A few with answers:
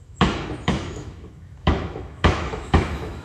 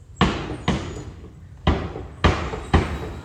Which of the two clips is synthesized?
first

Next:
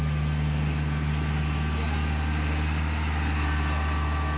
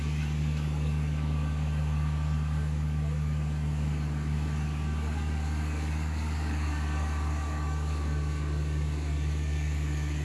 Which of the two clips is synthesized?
second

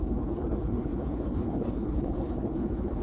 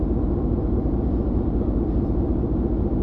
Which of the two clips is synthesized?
first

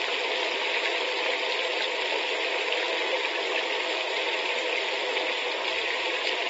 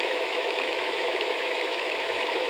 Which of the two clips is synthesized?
second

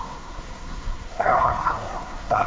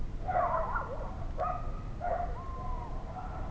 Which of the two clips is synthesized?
first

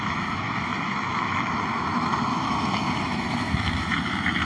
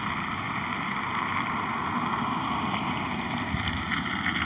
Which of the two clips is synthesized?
first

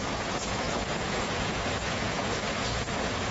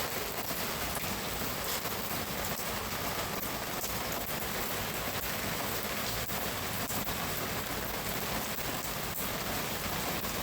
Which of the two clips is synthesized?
first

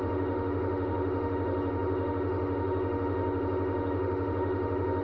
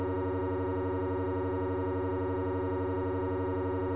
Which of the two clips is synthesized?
first